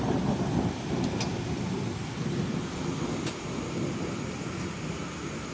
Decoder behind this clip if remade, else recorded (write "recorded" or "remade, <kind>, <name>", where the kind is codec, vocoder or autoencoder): recorded